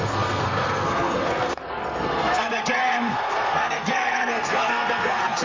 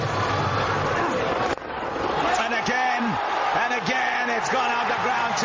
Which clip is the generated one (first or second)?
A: first